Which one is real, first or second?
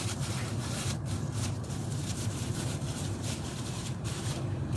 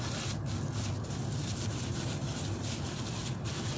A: second